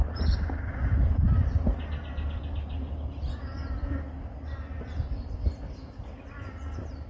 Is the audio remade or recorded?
recorded